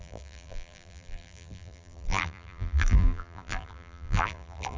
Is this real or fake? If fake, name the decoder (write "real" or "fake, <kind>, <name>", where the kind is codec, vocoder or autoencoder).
fake, vocoder, BigVGAN v2